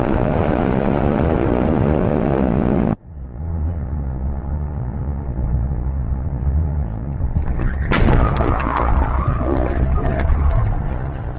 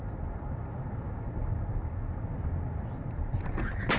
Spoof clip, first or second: first